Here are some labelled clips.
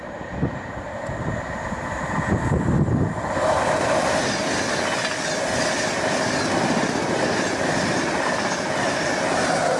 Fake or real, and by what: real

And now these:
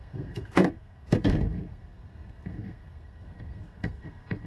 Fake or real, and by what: fake, codec, SNAC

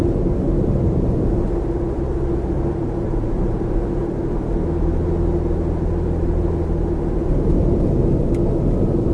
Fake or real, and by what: real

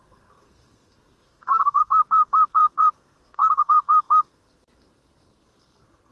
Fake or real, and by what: fake, codec, SNAC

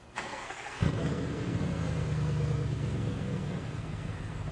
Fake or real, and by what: fake, codec, SNAC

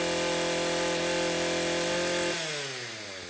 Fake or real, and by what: real